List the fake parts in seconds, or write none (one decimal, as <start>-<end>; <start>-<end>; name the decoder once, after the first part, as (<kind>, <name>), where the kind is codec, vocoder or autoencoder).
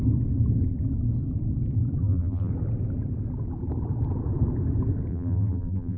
2.0-2.5 (vocoder, BigVGAN v2); 5.1-6.0